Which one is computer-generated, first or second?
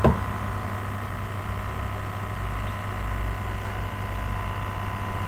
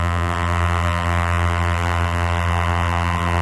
second